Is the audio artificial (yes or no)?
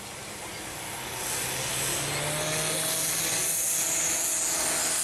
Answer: no